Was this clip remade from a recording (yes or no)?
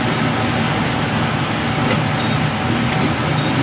no